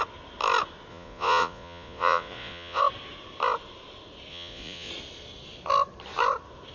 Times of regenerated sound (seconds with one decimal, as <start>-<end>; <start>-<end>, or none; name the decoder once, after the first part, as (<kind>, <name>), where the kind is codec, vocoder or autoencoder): 0.9-2.8 (vocoder, Vocos); 4.3-4.9